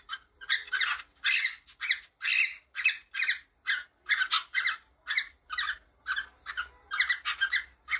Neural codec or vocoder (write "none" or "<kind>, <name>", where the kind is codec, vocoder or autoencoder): none